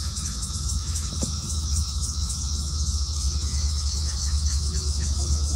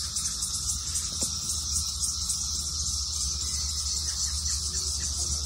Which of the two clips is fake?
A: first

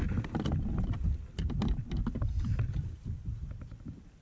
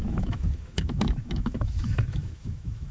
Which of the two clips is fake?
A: second